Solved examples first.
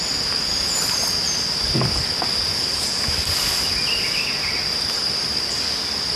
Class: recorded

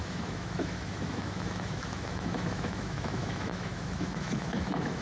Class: remade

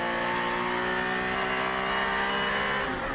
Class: recorded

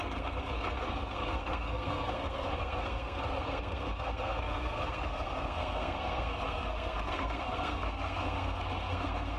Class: remade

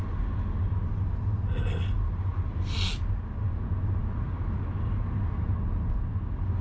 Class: recorded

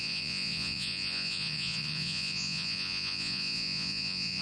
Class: remade